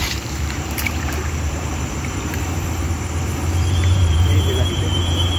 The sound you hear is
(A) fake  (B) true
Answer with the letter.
A